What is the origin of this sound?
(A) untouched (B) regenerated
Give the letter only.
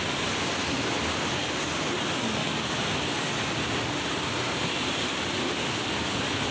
A